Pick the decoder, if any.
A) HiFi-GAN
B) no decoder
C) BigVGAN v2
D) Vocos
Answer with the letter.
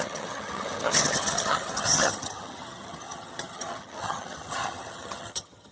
A